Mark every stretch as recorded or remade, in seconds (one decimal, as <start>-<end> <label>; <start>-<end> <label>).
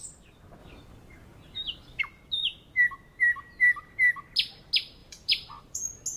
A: 0.0-0.6 recorded; 0.6-2.0 remade; 2.0-5.0 recorded; 5.0-5.8 remade; 5.8-6.2 recorded